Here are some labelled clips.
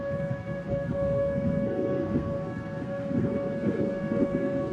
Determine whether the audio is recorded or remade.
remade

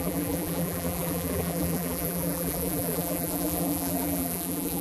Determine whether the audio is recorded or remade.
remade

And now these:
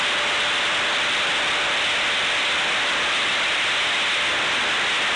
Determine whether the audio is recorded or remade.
recorded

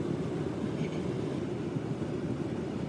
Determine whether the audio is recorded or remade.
recorded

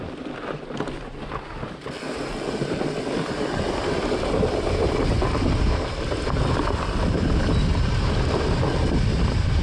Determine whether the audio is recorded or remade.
recorded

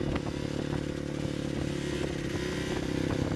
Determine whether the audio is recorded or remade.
recorded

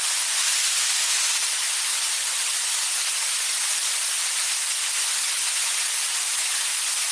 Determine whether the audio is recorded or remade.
recorded